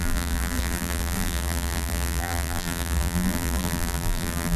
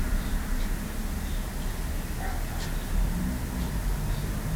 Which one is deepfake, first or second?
first